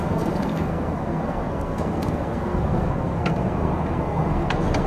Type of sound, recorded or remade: remade